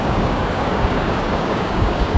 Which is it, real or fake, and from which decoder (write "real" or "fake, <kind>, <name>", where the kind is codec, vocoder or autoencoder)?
fake, codec, DAC